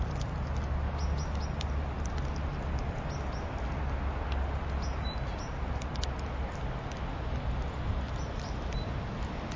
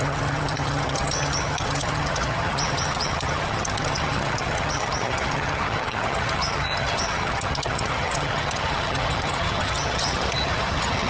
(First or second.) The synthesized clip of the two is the second